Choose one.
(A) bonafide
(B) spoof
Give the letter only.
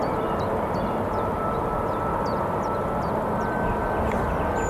A